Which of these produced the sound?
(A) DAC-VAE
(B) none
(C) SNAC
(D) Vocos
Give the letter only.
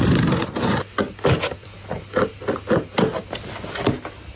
B